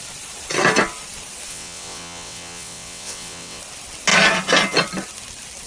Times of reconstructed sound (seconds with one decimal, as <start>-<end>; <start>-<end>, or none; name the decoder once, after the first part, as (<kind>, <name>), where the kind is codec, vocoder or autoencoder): 1.5-3.6 (vocoder, WaveNeXt)